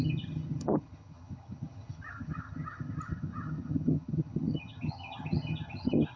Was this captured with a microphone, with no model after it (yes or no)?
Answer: no